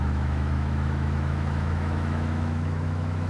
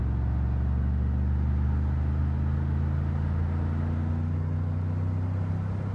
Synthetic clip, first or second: first